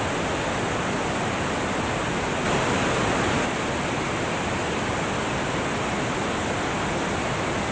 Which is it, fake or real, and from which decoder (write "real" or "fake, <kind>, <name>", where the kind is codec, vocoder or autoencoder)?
real